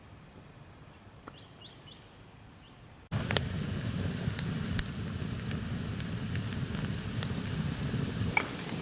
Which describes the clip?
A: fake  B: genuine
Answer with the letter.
B